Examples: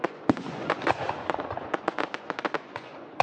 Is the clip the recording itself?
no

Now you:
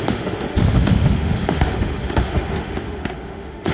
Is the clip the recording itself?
no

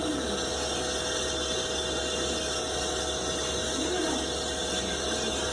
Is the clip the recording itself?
yes